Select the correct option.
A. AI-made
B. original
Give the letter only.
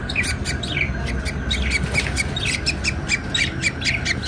B